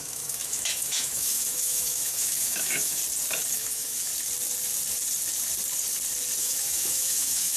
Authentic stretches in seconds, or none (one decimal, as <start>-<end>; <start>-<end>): 3.0-3.5; 4.1-6.4